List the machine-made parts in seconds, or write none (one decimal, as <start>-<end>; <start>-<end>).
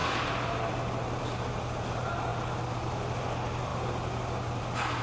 none